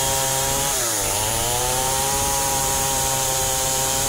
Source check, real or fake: fake